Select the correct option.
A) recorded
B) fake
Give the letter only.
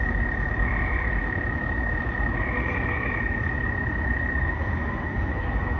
B